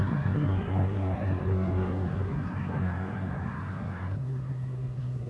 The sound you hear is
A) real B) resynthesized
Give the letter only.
B